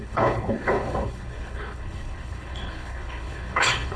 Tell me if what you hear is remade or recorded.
remade